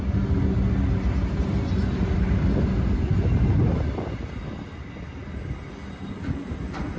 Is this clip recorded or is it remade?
recorded